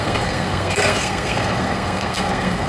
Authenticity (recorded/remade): remade